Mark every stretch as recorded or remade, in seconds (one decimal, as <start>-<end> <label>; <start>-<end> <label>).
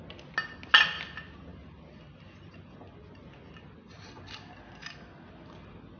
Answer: 0.0-6.0 recorded